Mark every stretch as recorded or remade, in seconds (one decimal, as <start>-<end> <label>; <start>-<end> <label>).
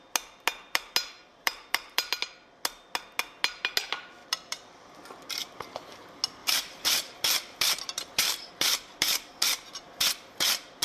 0.0-1.3 recorded; 1.3-2.1 remade; 2.1-4.2 recorded; 4.2-4.9 remade; 4.9-6.4 recorded; 6.4-10.0 remade; 10.0-10.8 recorded